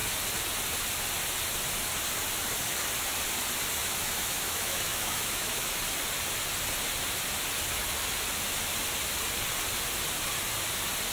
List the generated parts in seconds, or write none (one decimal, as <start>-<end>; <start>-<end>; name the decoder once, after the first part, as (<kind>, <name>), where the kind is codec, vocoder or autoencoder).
3.8-5.8 (autoencoder, DAC-VAE)